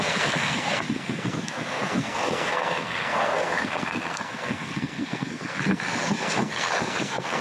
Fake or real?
fake